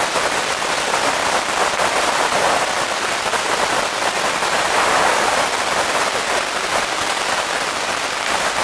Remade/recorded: recorded